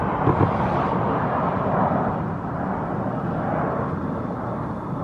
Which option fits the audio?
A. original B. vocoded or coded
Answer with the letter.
A